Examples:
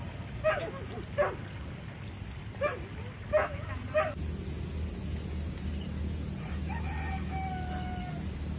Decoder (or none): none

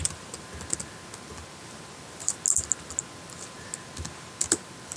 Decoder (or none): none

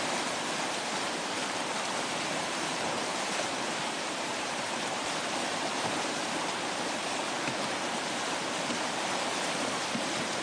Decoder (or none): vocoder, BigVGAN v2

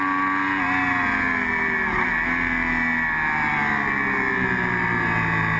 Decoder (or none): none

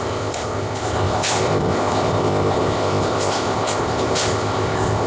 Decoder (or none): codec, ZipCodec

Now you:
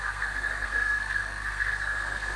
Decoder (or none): codec, SNAC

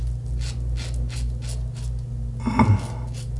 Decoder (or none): none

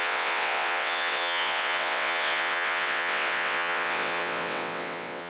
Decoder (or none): vocoder, WaveNeXt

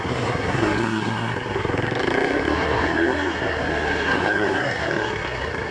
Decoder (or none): codec, SNAC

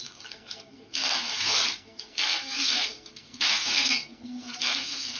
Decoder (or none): codec, SNAC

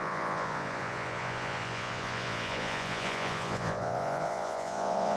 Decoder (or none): vocoder, Vocos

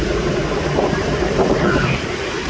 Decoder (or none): vocoder, BigVGAN v2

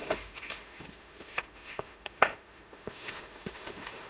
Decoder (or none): autoencoder, DAC-VAE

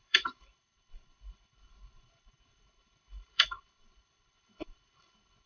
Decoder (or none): codec, HILCodec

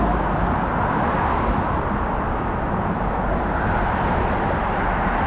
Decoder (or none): none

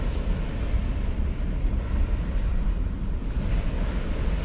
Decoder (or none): none